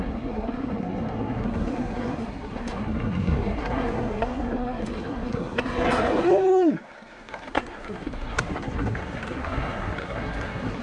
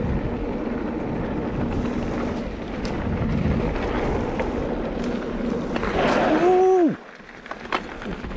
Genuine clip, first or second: second